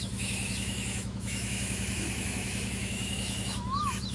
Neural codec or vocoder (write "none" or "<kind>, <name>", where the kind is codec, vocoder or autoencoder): autoencoder, DAC-VAE